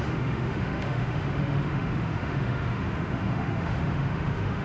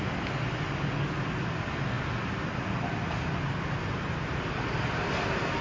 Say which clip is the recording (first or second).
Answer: second